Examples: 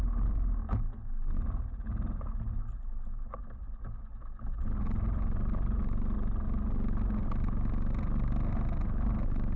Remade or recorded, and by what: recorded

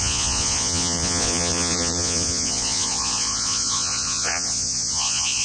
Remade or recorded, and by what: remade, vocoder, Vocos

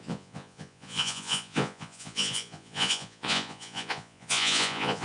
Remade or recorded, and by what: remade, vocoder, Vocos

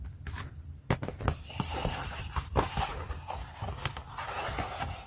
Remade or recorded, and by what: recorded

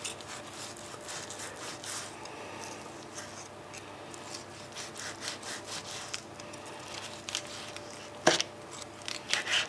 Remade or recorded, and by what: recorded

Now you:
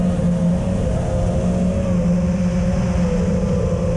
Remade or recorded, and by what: recorded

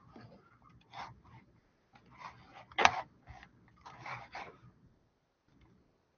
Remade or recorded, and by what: recorded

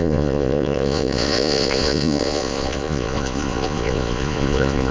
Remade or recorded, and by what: remade, vocoder, Vocos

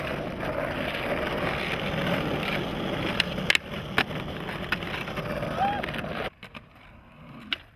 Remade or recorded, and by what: recorded